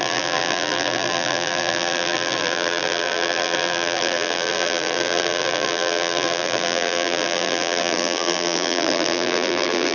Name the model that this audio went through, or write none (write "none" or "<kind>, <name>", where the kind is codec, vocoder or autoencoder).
vocoder, BigVGAN v2